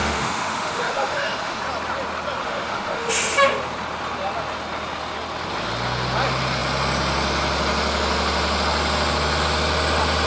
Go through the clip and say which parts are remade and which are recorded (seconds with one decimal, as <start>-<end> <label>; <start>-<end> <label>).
0.0-1.6 remade; 1.6-2.4 recorded; 2.4-3.1 remade; 3.1-10.3 recorded